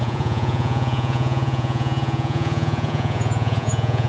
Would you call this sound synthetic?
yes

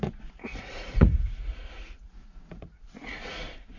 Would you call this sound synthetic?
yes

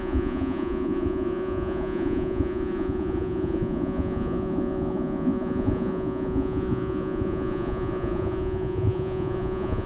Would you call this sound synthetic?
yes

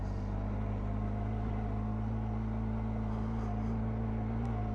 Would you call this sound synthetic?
no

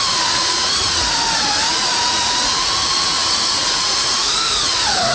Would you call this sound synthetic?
yes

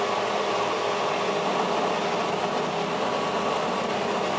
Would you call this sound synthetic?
no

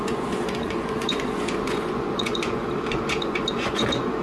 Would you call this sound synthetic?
yes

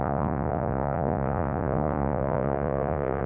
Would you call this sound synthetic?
yes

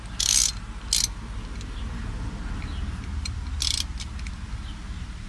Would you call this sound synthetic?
no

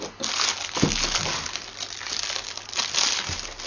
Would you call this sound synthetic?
no